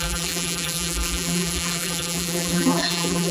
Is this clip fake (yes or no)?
yes